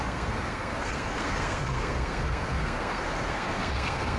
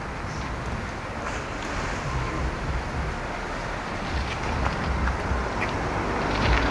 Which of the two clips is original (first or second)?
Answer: second